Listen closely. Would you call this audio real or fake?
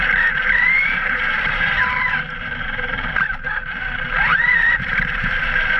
fake